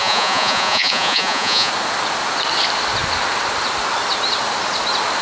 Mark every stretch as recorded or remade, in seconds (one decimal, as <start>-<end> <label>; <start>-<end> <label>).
0.0-1.7 remade; 1.7-5.2 recorded